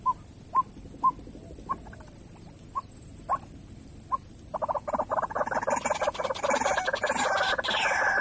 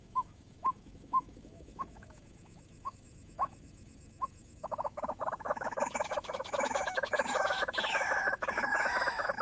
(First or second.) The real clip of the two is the first